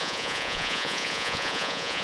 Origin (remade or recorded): remade